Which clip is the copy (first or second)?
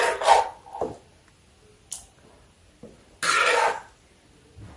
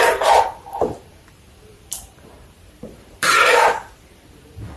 second